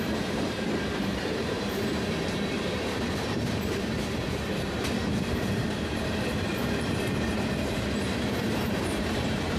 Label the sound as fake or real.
fake